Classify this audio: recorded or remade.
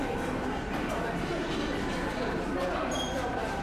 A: remade